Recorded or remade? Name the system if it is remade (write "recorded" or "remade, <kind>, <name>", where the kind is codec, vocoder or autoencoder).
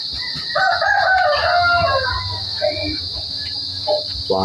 recorded